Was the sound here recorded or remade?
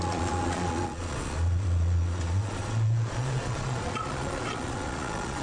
remade